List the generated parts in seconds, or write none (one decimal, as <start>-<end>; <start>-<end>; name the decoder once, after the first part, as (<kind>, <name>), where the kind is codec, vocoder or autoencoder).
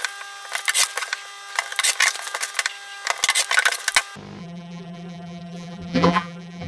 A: 4.4-6.7 (vocoder, BigVGAN v2)